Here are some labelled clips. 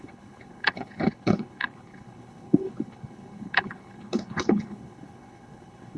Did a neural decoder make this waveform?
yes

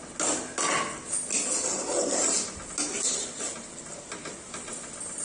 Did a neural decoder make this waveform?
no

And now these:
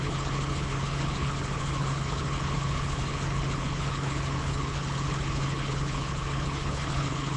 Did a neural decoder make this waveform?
yes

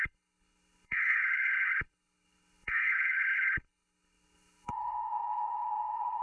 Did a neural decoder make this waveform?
yes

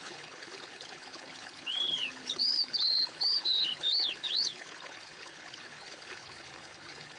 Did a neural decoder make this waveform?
yes